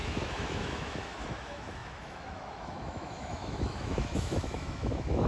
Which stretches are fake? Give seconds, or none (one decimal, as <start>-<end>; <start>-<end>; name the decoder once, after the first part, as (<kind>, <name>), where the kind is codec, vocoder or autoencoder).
0.0-5.3 (autoencoder, DAC-VAE)